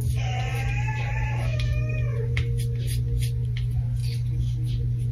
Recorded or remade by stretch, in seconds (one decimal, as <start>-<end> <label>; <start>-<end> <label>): 0.0-5.1 recorded